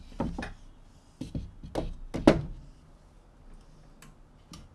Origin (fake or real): real